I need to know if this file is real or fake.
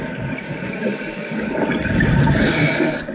fake